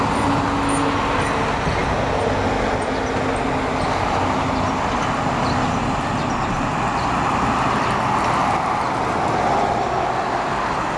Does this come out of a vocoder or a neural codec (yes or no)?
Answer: no